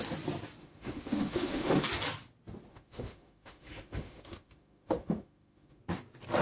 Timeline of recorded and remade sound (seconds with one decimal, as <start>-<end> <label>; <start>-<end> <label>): 0.0-0.6 recorded; 0.6-1.8 remade; 1.8-2.7 recorded; 2.7-5.8 remade; 5.8-6.4 recorded